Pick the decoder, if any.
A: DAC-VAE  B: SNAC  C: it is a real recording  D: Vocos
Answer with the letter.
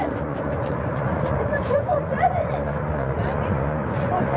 D